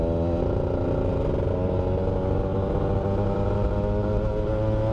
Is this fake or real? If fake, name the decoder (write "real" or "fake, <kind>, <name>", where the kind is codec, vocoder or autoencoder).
real